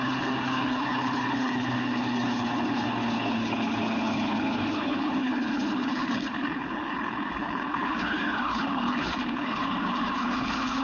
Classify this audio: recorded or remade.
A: remade